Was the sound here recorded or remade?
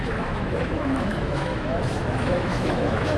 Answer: remade